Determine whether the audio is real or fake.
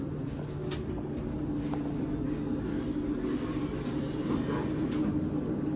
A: real